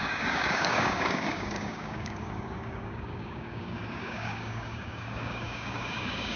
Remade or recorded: remade